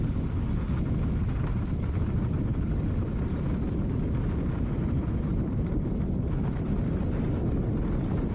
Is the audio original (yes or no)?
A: yes